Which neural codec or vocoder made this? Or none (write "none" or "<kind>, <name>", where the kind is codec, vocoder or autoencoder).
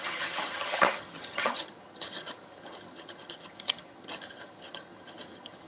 vocoder, HiFi-GAN